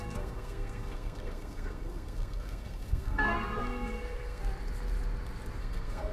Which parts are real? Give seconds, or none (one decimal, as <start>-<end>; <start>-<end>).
4.4-5.6